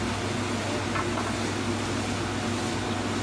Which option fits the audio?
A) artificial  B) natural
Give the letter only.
B